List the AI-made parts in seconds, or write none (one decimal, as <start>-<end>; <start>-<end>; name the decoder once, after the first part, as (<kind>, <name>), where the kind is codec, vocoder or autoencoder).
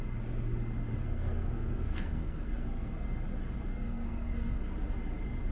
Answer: 0.9-2.9 (codec, SNAC); 3.7-4.6